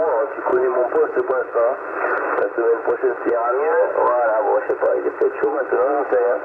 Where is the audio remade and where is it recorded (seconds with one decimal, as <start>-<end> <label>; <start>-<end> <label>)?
0.0-0.5 recorded; 0.5-1.3 remade; 1.3-4.9 recorded; 4.9-5.6 remade; 5.6-6.4 recorded